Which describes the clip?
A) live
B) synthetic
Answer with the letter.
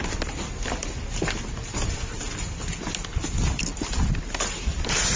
A